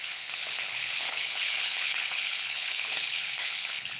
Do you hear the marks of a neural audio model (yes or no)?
yes